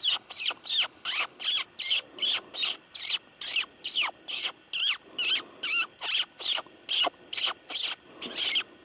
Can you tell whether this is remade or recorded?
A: recorded